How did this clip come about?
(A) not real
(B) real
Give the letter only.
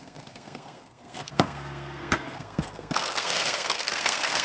A